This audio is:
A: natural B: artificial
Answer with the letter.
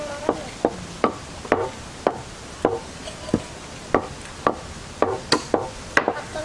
A